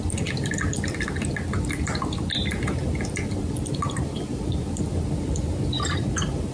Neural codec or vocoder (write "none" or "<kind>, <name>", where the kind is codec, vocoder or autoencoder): vocoder, BigVGAN v2